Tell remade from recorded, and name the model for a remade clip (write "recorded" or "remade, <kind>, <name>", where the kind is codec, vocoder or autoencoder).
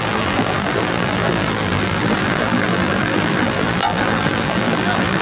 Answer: remade, vocoder, BigVGAN v2